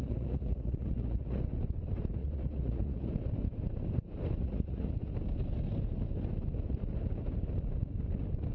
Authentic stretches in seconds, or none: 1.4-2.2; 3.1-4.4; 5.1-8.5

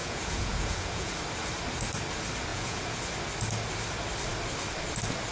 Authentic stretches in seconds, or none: 1.1-2.5; 3.0-5.3

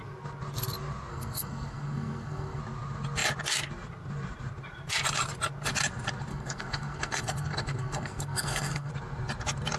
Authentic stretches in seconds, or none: 0.0-1.1; 2.6-6.3; 8.9-9.8

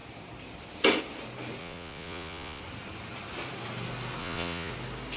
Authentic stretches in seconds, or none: 0.0-1.6; 2.6-4.2; 4.7-5.2

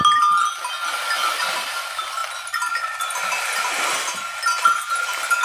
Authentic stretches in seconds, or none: 0.0-5.4

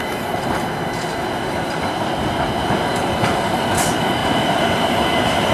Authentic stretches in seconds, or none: 0.0-2.9; 3.5-4.2

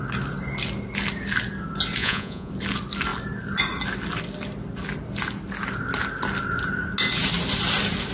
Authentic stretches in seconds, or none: 0.0-2.0; 2.5-8.1